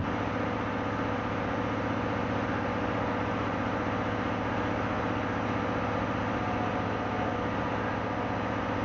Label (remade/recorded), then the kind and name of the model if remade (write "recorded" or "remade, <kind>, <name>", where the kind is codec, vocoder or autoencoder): recorded